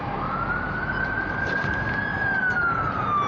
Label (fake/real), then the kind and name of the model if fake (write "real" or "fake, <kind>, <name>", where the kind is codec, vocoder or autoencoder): real